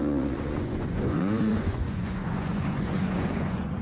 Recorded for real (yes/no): no